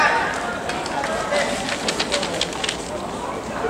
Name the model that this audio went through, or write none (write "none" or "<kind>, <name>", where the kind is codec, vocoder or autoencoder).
none